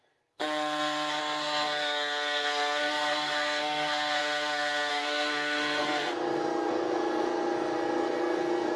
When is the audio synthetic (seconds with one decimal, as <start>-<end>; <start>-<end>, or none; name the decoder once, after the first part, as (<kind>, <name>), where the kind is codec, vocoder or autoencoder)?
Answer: 0.0-0.4 (codec, SNAC); 1.2-4.2; 4.9-8.8